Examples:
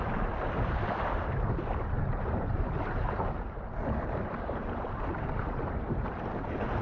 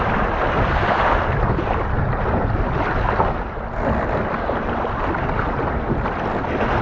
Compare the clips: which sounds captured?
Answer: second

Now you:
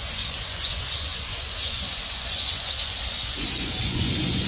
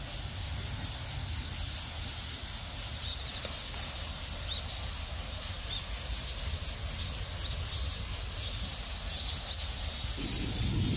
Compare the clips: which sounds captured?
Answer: second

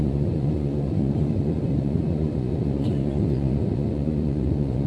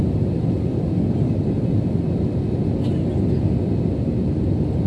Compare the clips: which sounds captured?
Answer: second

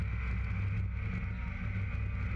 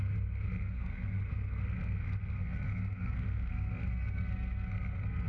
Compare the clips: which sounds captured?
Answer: first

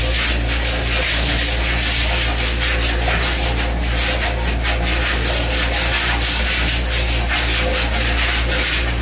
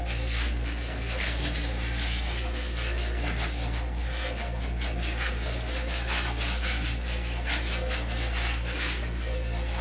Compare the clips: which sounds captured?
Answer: first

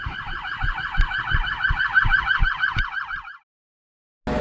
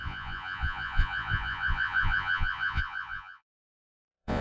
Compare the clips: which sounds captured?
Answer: first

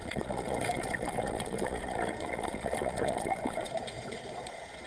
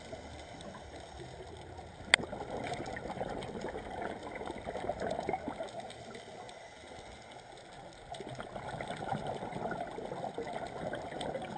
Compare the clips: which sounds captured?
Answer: second